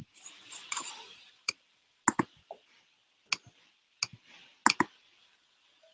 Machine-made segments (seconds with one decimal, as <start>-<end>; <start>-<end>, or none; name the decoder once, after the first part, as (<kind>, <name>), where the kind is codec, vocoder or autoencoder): 0.5-2.0 (vocoder, Vocos); 5.2-5.9